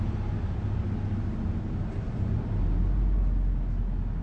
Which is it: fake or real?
real